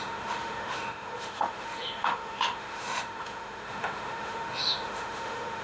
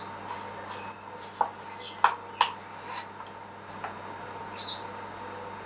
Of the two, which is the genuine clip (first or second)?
second